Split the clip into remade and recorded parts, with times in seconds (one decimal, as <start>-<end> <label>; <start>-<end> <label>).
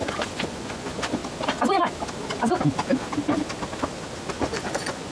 0.0-1.2 remade; 1.2-4.3 recorded; 4.3-5.1 remade